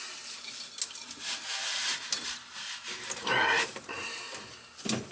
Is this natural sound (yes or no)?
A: yes